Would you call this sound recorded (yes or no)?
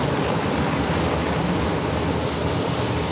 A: yes